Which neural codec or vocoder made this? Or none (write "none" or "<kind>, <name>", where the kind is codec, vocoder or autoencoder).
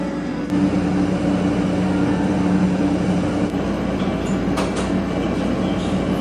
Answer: none